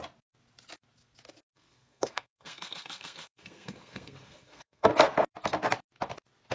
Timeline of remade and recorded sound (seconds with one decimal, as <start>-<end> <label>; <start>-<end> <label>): 0.0-1.5 recorded; 1.5-4.9 remade; 4.9-6.5 recorded